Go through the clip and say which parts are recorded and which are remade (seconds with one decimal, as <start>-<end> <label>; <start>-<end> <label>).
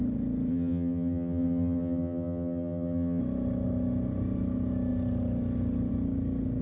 0.0-0.5 recorded; 0.5-3.2 remade; 3.2-6.6 recorded